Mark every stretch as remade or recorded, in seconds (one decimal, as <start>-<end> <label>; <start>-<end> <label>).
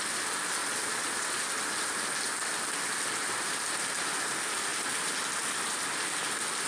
0.0-0.6 recorded; 0.6-1.3 remade; 1.3-6.7 recorded